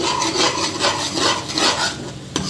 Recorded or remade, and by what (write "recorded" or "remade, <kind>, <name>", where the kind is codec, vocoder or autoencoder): recorded